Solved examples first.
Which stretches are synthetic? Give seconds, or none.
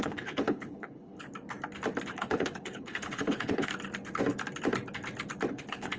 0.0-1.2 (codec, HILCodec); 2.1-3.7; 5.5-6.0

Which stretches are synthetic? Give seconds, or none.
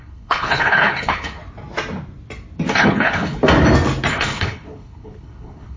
0.0-1.4 (codec, HILCodec); 2.7-3.4; 4.1-5.8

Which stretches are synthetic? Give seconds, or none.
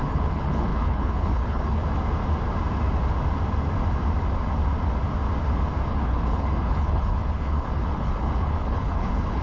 0.0-1.8 (codec, HILCodec); 5.9-9.4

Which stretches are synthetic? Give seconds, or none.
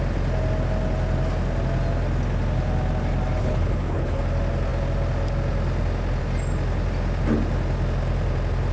3.4-4.2 (codec, HILCodec)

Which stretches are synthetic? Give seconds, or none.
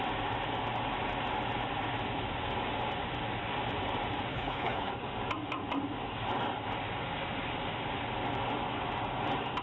4.3-4.9 (codec, HILCodec)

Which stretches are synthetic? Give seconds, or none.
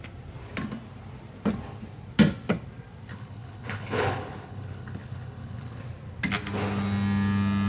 3.1-5.8 (codec, HILCodec)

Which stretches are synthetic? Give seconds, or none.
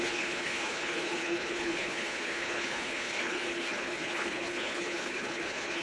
0.0-5.8 (codec, HILCodec)